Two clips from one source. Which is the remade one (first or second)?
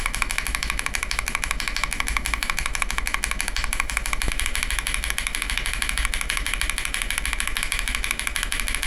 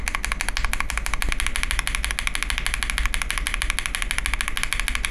first